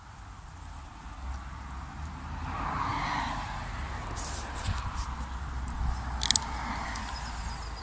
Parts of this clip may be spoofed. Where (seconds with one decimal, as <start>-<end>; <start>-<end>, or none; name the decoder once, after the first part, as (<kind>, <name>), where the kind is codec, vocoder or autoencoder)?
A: none